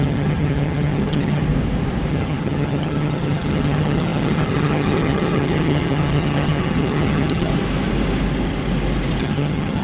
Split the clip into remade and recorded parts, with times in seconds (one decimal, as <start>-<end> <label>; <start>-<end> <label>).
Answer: 0.0-1.4 remade; 1.4-2.1 recorded; 2.1-7.5 remade; 7.5-9.2 recorded; 9.2-9.8 remade